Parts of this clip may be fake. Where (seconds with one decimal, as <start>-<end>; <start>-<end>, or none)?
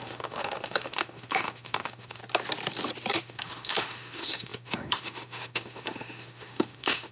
0.0-2.2; 3.2-7.1